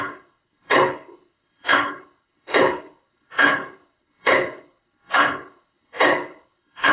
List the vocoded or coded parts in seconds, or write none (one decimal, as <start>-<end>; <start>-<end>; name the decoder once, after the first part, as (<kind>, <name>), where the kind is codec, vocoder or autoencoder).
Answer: 0.0-6.9 (codec, HILCodec)